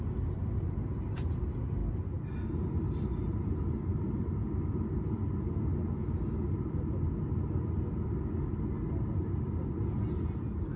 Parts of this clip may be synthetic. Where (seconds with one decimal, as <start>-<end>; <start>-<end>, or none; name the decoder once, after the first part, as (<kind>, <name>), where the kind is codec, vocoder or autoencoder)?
none